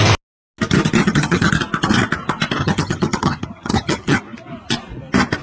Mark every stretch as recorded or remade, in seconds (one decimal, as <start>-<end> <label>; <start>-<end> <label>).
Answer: 0.0-1.0 recorded; 1.0-1.5 remade; 1.5-2.6 recorded; 2.6-4.2 remade; 4.2-5.4 recorded